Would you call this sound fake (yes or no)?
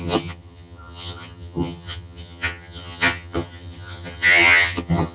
yes